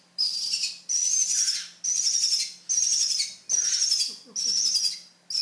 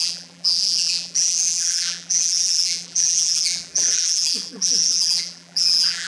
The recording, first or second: first